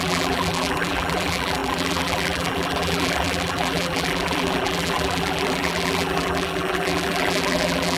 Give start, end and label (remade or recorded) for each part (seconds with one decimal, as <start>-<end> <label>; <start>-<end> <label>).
0.0-8.0 remade